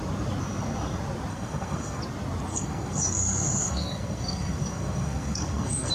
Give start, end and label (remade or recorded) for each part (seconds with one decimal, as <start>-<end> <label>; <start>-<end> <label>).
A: 0.0-1.3 recorded; 1.3-2.0 remade; 2.0-2.5 recorded; 2.5-5.9 remade